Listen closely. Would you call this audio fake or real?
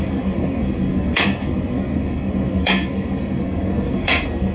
fake